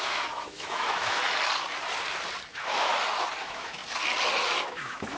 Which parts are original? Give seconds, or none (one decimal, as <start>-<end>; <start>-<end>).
1.2-2.5; 2.9-3.4; 3.8-4.6